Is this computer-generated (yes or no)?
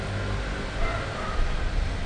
no